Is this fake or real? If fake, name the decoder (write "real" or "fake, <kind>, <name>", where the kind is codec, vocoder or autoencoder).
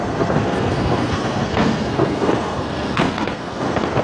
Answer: fake, codec, SNAC